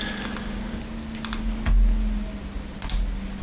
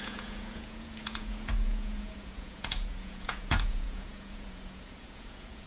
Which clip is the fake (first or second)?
second